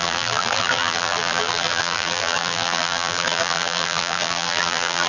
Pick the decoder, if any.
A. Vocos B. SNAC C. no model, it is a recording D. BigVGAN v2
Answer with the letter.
D